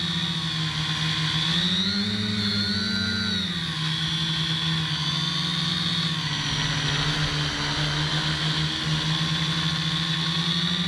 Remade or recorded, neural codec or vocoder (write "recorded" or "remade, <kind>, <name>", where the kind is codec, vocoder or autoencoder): recorded